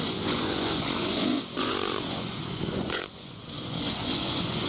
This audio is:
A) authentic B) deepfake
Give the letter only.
B